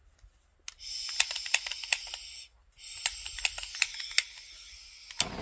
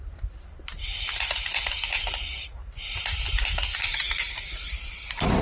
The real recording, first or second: first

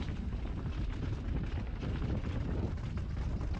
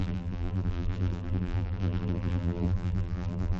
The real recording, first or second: first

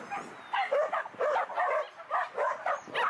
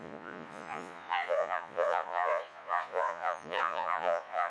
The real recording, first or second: first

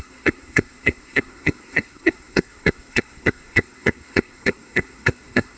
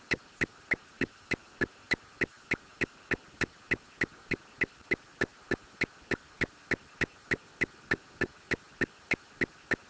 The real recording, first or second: second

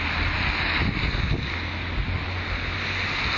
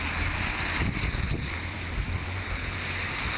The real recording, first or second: first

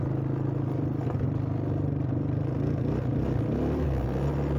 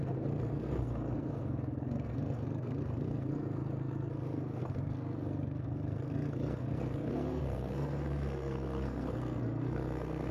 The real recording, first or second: first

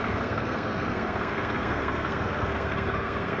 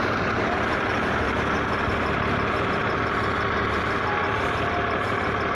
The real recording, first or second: second